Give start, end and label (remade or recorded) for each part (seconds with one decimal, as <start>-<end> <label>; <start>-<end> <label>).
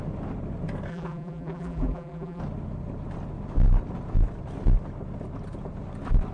0.0-0.9 recorded; 0.9-2.4 remade; 2.4-6.3 recorded